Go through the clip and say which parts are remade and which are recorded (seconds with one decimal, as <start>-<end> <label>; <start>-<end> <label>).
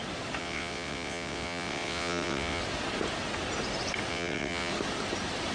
0.0-0.4 recorded; 0.4-2.6 remade; 2.6-4.1 recorded; 4.1-4.7 remade; 4.7-5.5 recorded